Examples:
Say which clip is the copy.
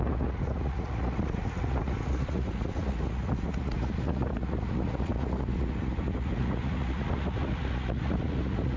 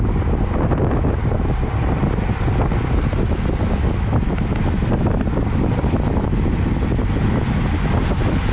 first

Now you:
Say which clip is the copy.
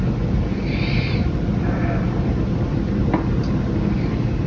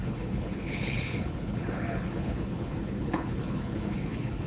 second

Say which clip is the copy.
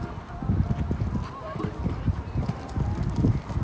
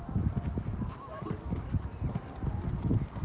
second